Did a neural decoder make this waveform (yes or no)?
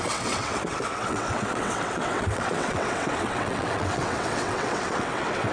yes